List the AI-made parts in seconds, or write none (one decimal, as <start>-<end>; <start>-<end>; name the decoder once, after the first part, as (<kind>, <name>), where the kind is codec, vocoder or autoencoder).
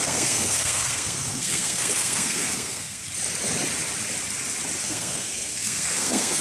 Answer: 0.0-3.0 (codec, SNAC); 4.8-6.4